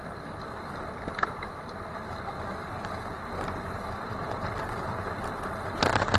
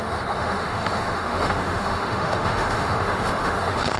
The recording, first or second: first